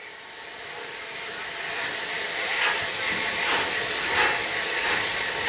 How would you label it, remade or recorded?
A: recorded